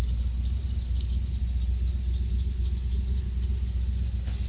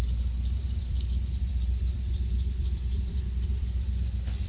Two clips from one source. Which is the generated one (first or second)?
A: second